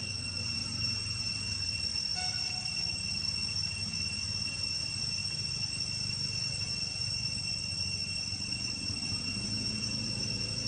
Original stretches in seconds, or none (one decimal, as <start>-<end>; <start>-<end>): 0.0-0.6; 1.3-9.0; 10.0-10.7